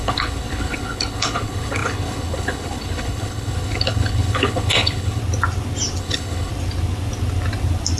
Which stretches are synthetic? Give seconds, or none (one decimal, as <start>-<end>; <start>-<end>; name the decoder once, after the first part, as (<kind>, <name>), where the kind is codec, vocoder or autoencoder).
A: 0.0-5.2 (codec, HILCodec); 6.0-6.5